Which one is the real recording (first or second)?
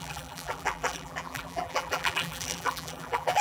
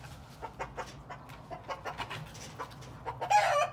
second